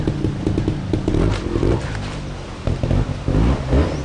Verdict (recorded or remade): recorded